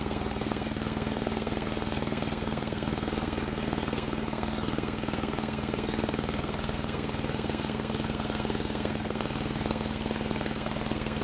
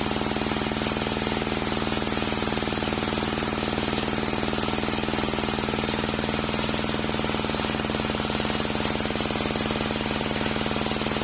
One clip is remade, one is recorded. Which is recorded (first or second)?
second